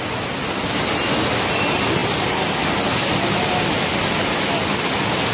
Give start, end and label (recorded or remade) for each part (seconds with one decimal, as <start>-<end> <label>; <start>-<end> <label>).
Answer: 0.0-5.3 recorded